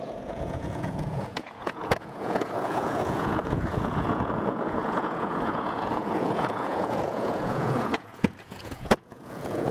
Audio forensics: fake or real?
fake